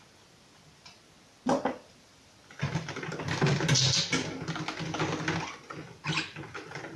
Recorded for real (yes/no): yes